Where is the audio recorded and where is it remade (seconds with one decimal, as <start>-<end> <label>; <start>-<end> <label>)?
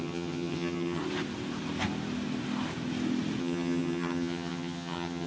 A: 0.0-1.0 remade; 1.0-3.4 recorded; 3.4-5.3 remade